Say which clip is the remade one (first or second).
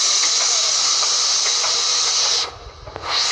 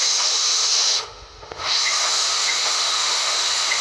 second